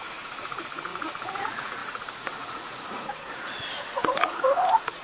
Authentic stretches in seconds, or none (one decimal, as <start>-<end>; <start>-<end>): none